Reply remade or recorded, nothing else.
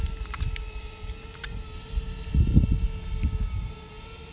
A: recorded